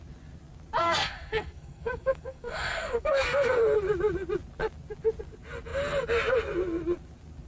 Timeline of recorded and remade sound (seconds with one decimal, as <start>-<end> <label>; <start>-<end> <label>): 0.0-0.8 recorded; 0.8-3.6 remade; 3.6-7.5 recorded